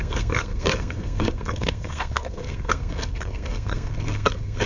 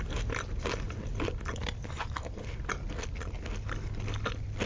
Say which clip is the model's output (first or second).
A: first